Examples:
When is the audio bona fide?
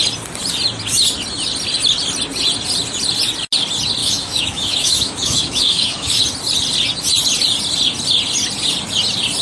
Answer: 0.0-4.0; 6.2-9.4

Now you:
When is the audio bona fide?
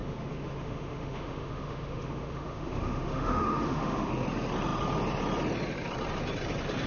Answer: 4.1-6.9